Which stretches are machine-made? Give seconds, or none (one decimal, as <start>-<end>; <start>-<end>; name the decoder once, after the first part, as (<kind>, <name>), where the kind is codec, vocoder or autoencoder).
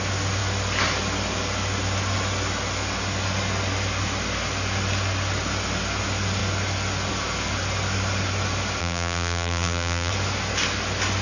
8.8-10.1 (vocoder, BigVGAN v2)